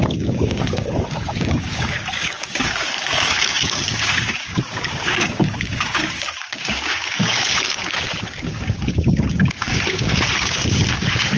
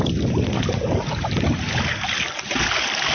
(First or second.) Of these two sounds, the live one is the second